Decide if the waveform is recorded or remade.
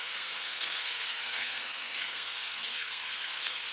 remade